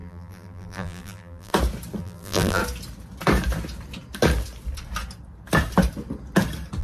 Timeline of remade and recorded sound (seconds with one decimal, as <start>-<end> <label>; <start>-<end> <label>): 0.0-1.5 remade; 1.5-2.0 recorded; 2.0-2.6 remade; 2.6-6.8 recorded